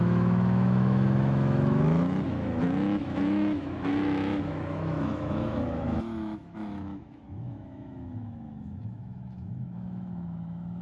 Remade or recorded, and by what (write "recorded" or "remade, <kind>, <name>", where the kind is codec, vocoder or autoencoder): remade, autoencoder, DAC-VAE